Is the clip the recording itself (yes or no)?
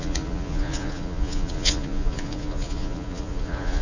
no